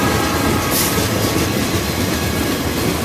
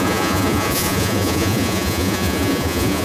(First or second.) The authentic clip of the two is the first